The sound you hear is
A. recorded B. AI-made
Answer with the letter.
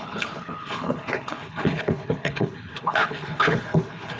B